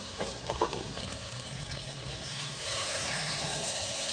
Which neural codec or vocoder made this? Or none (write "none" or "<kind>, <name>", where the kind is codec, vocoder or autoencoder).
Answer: codec, SNAC